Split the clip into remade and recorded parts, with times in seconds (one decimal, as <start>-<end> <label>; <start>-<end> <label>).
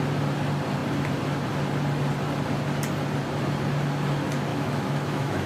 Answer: 0.0-4.5 recorded; 4.5-5.5 remade